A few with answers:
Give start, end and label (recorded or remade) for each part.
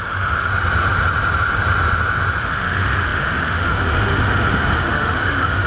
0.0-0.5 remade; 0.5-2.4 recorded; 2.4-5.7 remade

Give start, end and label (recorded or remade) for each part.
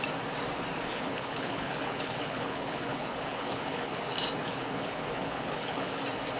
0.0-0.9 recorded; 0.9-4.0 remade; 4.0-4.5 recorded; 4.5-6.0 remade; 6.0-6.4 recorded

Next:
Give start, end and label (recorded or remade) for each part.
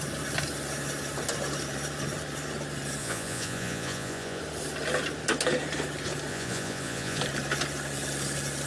0.0-3.0 recorded; 3.0-4.4 remade; 4.4-6.3 recorded; 6.3-7.2 remade; 7.2-8.7 recorded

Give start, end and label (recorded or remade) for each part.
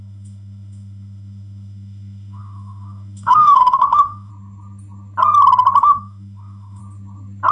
0.0-4.3 remade; 4.3-5.8 recorded; 5.8-6.8 remade; 6.8-7.5 recorded